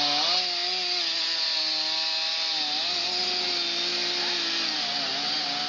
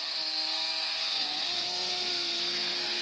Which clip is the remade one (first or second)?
second